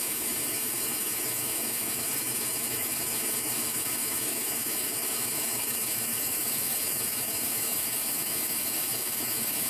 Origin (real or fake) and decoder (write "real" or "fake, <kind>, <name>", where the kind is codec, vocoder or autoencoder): fake, autoencoder, DAC-VAE